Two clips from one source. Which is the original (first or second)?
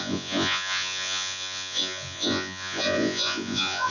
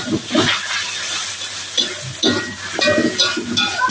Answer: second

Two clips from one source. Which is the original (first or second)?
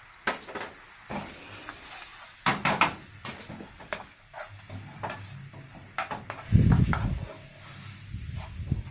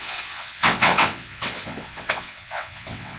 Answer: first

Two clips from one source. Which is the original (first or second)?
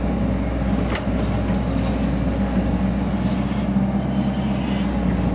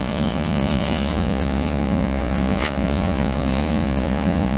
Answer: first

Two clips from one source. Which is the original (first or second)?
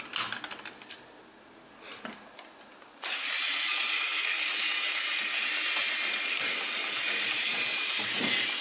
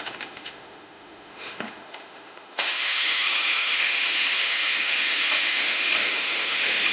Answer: first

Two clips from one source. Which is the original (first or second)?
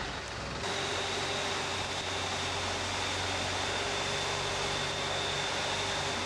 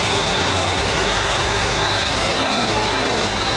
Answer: first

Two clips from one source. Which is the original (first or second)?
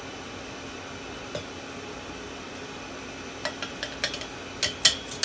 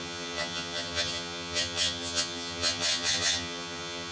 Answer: first